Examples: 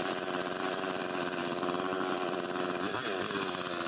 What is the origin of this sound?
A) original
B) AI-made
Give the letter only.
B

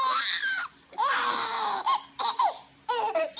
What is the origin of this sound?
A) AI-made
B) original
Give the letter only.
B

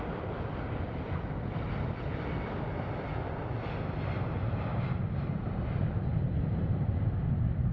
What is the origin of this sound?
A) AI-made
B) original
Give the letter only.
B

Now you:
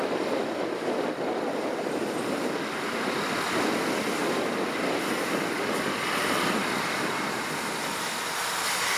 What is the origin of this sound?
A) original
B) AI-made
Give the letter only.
A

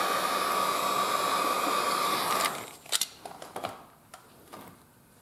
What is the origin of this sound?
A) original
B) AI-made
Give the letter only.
A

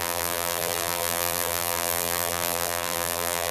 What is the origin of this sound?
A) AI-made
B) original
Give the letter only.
A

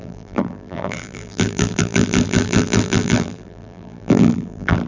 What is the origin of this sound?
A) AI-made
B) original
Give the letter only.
A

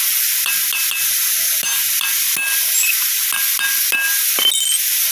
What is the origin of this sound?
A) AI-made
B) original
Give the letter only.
B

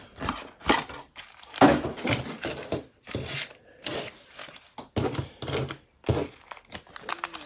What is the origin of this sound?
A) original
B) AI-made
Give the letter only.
A